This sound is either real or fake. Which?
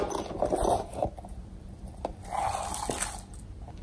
real